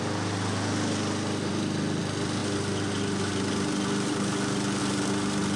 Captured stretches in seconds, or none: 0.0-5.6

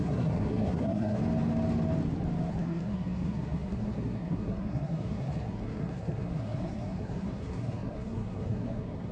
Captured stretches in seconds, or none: 1.2-2.5

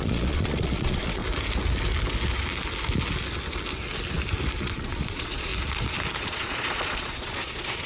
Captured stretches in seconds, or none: 1.2-4.6; 5.5-6.2

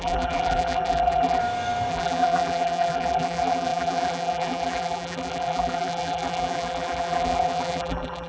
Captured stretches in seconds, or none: 1.4-1.9

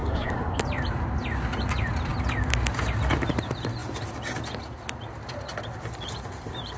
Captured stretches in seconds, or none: 0.6-6.8

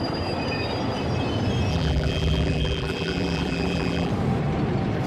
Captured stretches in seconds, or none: 0.0-1.7; 4.1-5.1

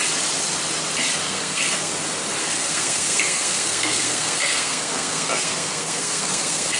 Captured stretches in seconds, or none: 0.0-1.2; 1.9-2.4

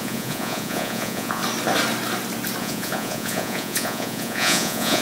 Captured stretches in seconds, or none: 1.4-2.6